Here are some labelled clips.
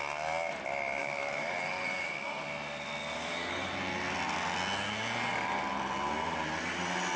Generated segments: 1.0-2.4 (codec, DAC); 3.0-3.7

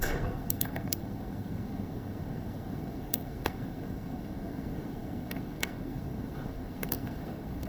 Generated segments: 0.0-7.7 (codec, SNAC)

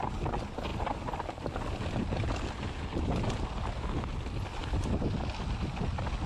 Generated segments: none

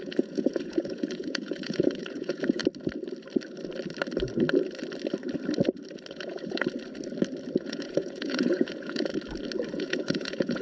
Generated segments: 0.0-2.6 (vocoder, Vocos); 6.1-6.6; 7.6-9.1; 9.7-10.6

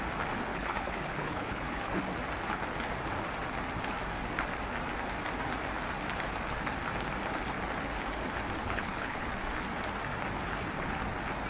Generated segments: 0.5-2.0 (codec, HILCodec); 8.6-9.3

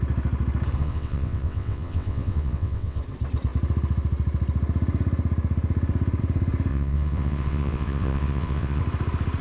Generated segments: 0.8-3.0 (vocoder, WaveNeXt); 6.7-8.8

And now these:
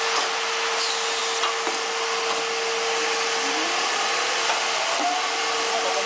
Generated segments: none